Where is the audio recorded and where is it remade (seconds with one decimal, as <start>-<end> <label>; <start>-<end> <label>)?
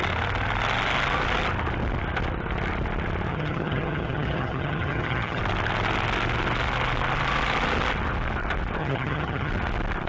0.0-3.3 recorded; 3.3-5.4 remade; 5.4-8.8 recorded; 8.8-9.5 remade; 9.5-10.1 recorded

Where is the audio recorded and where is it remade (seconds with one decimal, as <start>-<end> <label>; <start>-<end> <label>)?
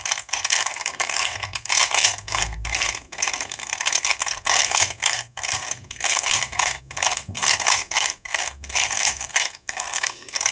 0.0-10.5 remade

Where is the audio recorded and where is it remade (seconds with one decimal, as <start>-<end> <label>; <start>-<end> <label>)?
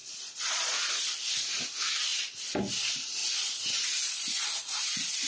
0.0-0.8 remade; 0.8-5.3 recorded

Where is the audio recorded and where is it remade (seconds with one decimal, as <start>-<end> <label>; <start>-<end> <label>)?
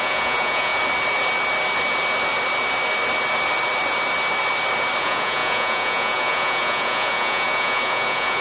0.0-0.7 remade; 0.7-5.0 recorded; 5.0-8.4 remade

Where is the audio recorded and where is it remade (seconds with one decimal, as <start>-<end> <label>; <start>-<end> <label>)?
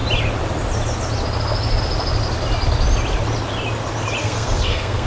0.0-4.2 recorded; 4.2-5.1 remade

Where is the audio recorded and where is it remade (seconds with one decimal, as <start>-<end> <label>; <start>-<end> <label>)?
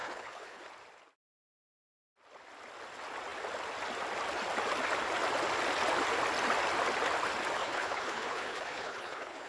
0.0-0.6 remade; 0.6-7.6 recorded; 7.6-9.5 remade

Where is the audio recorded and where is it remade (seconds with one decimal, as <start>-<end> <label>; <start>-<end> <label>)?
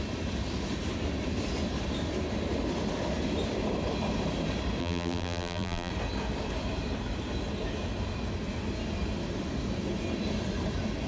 0.0-4.8 recorded; 4.8-5.9 remade; 5.9-11.1 recorded